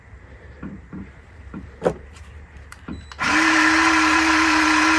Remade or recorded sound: remade